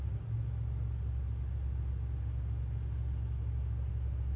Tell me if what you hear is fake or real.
real